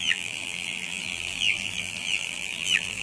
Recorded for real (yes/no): no